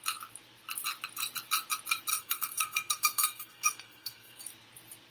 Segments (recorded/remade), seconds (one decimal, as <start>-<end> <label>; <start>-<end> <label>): 0.0-2.1 recorded; 2.1-4.4 remade; 4.4-5.1 recorded